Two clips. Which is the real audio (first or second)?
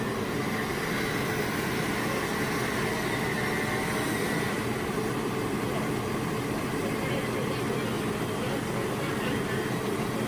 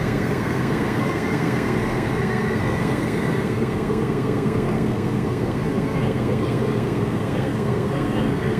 first